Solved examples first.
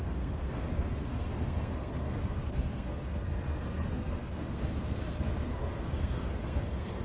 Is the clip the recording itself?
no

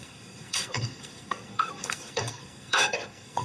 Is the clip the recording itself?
no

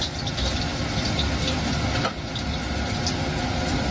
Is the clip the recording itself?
yes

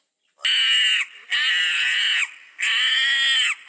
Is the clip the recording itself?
yes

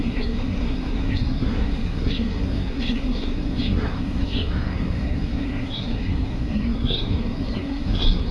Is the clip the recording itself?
no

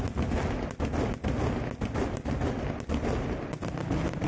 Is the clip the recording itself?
yes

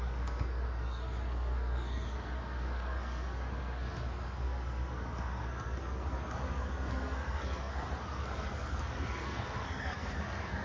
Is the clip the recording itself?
no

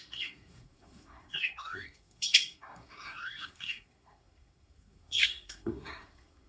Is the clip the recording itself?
no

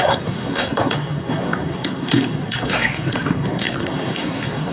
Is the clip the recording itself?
no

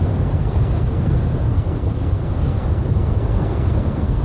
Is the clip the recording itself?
no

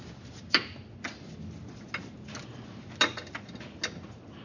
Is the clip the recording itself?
yes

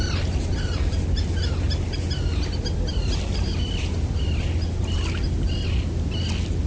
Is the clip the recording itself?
yes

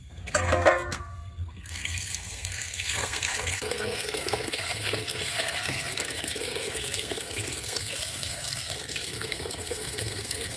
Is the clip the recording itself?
no